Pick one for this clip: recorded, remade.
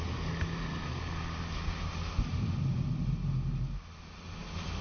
recorded